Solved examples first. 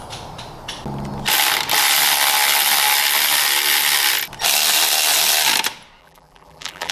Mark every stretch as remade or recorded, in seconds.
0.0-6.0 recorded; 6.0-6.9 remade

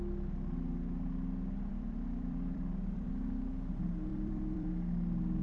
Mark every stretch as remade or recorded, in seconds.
0.0-1.7 recorded; 1.7-3.1 remade; 3.1-4.1 recorded; 4.1-4.7 remade; 4.7-5.4 recorded

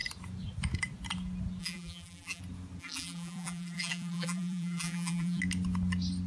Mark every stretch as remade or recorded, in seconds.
0.0-1.6 recorded; 1.6-2.4 remade; 2.4-2.8 recorded; 2.8-5.4 remade; 5.4-6.3 recorded

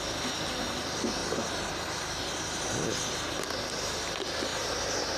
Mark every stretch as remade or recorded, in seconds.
0.0-5.2 recorded

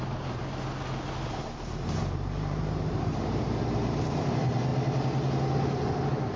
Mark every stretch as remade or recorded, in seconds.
0.0-0.4 remade; 0.4-1.4 recorded; 1.4-4.7 remade; 4.7-6.4 recorded

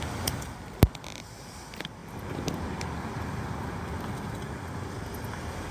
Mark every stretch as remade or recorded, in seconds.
0.0-5.7 recorded

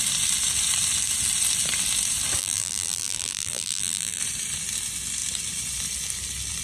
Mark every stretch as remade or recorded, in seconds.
0.0-2.4 recorded; 2.4-4.2 remade; 4.2-6.6 recorded